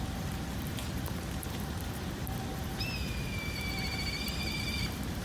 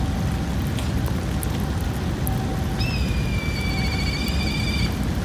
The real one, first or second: second